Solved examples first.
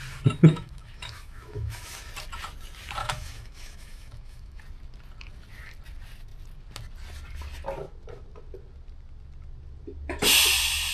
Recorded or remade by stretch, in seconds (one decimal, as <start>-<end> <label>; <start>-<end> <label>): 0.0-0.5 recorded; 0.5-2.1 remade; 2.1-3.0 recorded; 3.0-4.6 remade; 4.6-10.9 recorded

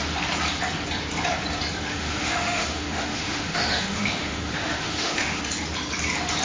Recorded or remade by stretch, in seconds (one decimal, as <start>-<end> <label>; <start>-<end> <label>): 0.0-1.9 recorded; 1.9-5.4 remade; 5.4-6.4 recorded

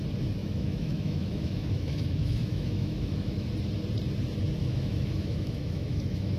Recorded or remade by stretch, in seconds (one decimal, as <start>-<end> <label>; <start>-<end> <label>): 0.0-0.4 recorded; 0.4-3.5 remade; 3.5-4.6 recorded; 4.6-6.4 remade

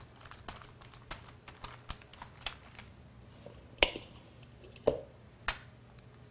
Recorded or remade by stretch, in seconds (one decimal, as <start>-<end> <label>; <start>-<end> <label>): 0.0-6.3 recorded